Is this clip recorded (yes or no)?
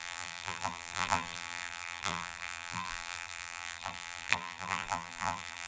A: no